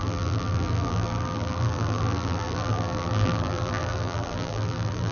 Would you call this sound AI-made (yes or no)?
yes